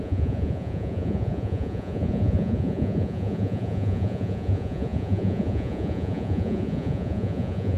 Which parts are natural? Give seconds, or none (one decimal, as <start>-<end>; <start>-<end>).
none